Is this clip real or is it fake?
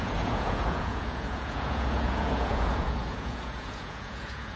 fake